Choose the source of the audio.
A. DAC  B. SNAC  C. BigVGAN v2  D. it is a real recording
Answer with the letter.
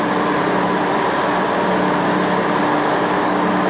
D